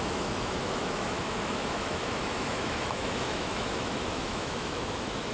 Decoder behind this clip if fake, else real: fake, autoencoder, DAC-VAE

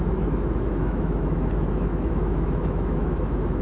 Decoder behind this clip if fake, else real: fake, autoencoder, DAC-VAE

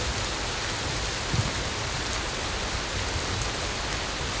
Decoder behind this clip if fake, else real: real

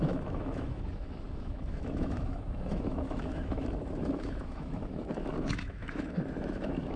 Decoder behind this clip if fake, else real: fake, autoencoder, DAC-VAE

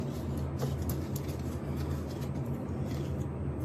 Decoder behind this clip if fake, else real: real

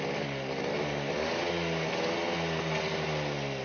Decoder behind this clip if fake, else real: real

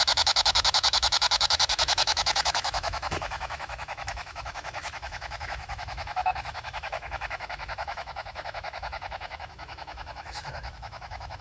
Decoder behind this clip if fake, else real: fake, autoencoder, DAC-VAE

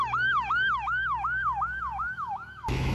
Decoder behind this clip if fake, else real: fake, autoencoder, DAC-VAE